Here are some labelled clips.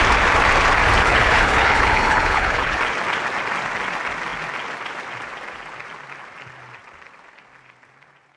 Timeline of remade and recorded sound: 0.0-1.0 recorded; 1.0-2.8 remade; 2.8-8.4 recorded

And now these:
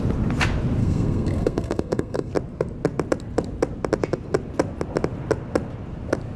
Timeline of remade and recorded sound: 0.0-0.8 recorded; 0.8-2.3 remade; 2.3-6.4 recorded

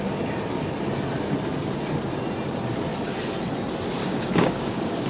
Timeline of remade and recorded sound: 0.0-4.0 recorded; 4.0-5.1 remade

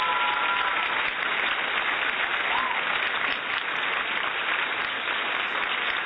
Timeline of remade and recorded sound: 0.0-6.1 recorded

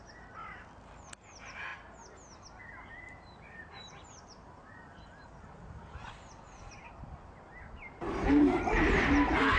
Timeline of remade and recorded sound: 0.0-1.7 remade; 1.7-2.6 recorded; 2.6-9.6 remade

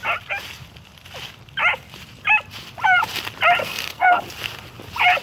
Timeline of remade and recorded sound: 0.0-3.6 recorded; 3.6-4.2 remade; 4.2-5.2 recorded